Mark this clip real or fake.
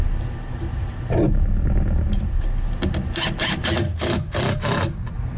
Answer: real